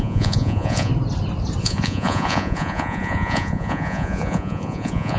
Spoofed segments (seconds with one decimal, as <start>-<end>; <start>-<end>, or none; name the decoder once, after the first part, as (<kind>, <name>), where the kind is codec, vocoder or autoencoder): 0.0-0.9 (vocoder, Vocos); 1.6-5.2